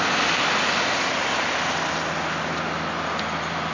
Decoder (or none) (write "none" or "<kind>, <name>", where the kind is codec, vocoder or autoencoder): none